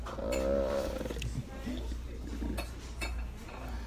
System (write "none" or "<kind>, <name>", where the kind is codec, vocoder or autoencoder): none